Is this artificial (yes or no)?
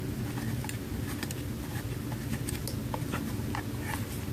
no